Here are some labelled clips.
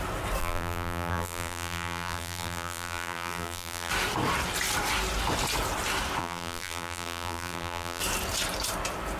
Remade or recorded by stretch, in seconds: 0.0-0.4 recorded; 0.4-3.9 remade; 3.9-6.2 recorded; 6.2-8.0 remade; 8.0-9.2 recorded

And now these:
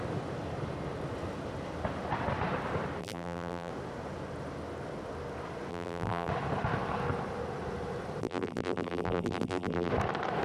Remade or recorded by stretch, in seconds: 0.0-3.0 recorded; 3.0-3.7 remade; 3.7-5.7 recorded; 5.7-6.3 remade; 6.3-8.2 recorded; 8.2-9.9 remade; 9.9-10.4 recorded

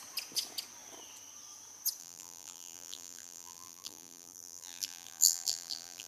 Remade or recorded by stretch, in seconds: 0.0-2.0 recorded; 2.0-6.1 remade

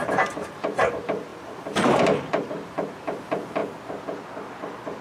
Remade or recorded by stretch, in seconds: 0.0-3.6 remade; 3.6-5.0 recorded

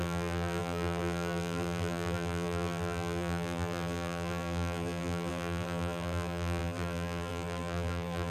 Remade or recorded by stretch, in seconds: 0.0-8.3 remade